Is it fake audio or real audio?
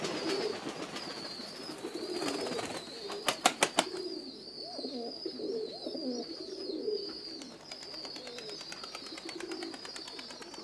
real